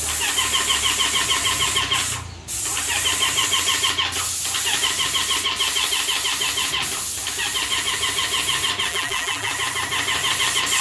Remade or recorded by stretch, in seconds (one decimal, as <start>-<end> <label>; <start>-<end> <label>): 0.0-8.9 recorded; 8.9-9.5 remade; 9.5-10.8 recorded